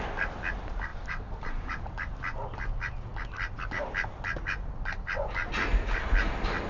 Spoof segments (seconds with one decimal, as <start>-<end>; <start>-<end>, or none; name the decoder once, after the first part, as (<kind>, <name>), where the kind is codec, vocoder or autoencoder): 0.9-1.8 (vocoder, BigVGAN v2)